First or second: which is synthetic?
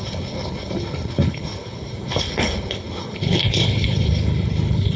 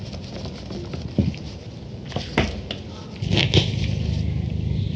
first